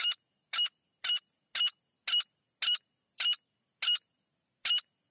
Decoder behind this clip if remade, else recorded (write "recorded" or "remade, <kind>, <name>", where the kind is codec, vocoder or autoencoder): recorded